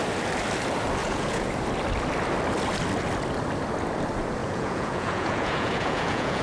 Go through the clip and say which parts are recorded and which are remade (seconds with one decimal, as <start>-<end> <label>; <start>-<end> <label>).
0.0-1.0 recorded; 1.0-1.5 remade; 1.5-4.4 recorded; 4.4-6.4 remade